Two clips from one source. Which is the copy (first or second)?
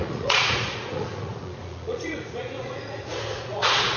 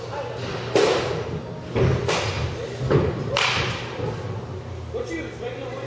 first